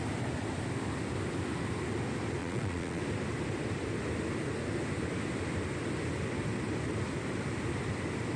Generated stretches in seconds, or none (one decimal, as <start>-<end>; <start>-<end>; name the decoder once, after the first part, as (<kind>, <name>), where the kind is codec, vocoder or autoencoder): 2.4-3.0 (vocoder, Vocos)